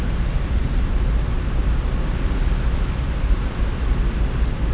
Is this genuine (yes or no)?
yes